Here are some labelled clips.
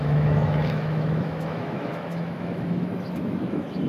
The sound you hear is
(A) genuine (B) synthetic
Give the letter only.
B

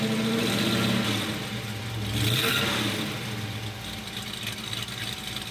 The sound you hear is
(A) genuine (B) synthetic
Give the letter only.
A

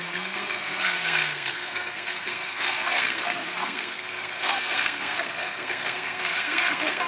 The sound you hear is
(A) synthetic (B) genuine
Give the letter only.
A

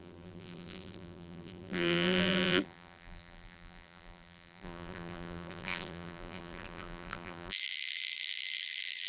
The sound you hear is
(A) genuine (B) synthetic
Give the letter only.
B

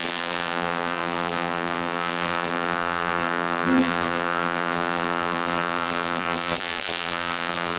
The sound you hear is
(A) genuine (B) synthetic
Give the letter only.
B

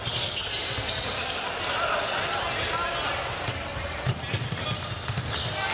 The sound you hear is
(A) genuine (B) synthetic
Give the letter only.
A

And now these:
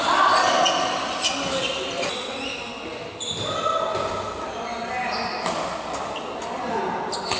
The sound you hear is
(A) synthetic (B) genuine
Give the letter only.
B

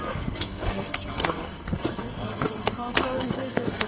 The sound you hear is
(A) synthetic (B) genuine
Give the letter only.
A